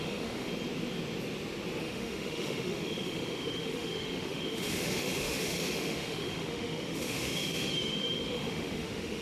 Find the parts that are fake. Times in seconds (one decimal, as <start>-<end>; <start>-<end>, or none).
0.0-0.5; 1.8-9.2